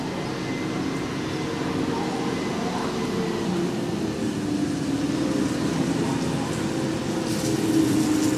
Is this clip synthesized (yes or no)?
no